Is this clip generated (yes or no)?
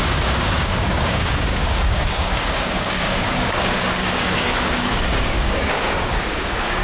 yes